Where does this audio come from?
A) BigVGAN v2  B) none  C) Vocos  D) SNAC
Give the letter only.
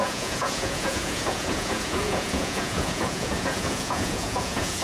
C